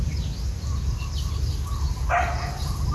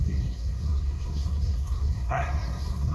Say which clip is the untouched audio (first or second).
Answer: first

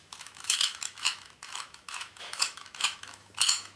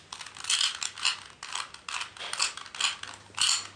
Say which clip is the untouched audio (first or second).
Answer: second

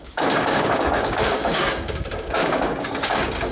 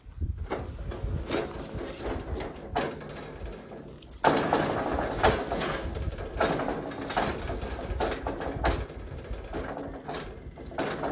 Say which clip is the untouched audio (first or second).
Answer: second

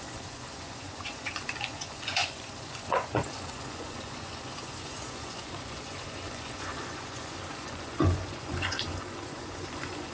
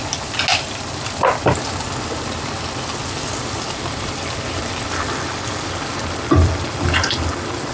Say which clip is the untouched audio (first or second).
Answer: second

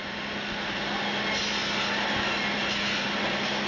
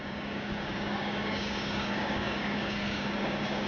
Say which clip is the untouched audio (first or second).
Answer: first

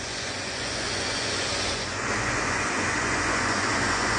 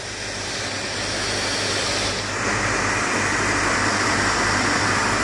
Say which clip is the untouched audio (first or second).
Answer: second